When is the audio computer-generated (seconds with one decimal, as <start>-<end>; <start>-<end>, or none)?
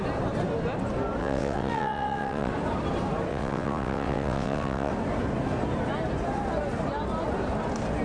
1.2-2.5; 3.3-4.9